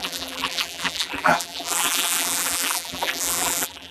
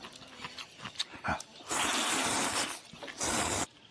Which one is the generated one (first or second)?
first